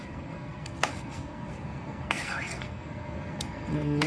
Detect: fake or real fake